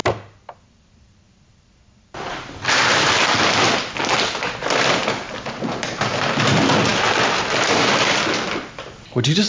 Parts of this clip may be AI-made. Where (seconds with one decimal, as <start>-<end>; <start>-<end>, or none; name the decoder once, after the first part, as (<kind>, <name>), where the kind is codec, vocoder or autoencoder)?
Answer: none